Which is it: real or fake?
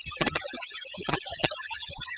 fake